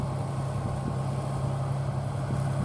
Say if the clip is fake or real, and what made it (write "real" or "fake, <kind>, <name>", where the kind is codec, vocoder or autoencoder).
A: real